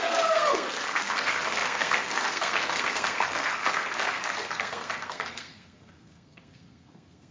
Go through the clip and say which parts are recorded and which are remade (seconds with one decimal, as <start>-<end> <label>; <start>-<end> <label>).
0.0-7.3 remade